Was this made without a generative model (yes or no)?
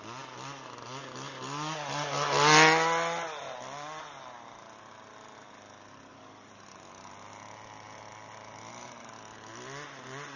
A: yes